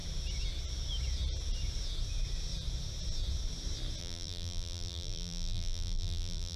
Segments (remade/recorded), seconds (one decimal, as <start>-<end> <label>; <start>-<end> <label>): 0.0-4.0 recorded; 4.0-6.6 remade